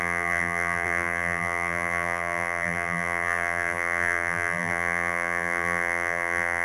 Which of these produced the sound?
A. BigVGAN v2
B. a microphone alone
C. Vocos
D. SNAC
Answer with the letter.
A